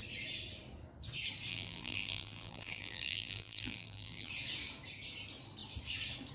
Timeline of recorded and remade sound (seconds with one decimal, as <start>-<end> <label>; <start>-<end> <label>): 0.0-1.5 recorded; 1.5-4.3 remade; 4.3-6.3 recorded